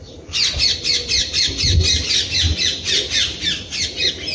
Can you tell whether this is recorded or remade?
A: recorded